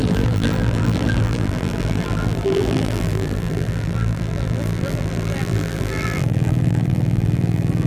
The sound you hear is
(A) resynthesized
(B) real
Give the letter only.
A